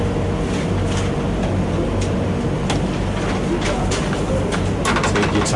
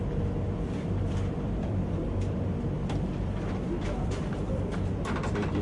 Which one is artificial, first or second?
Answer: second